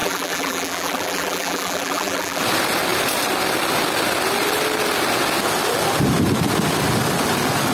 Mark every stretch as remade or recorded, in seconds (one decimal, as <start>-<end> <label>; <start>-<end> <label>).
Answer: 0.0-2.4 remade; 2.4-7.7 recorded